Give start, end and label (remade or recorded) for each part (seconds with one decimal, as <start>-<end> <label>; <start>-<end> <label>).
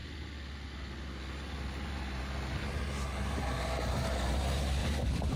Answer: 0.0-4.8 recorded; 4.8-5.4 remade